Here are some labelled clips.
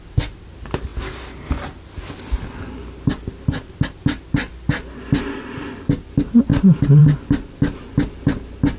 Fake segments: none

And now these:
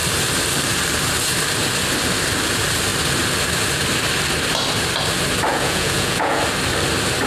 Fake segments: 5.5-6.4 (vocoder, Vocos)

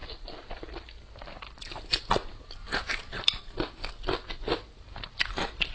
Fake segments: none